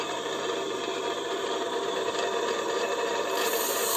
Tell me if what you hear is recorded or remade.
remade